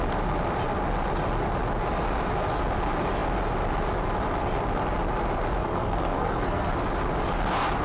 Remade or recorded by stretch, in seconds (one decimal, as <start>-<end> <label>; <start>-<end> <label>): 0.0-5.6 recorded; 5.6-6.7 remade; 6.7-7.8 recorded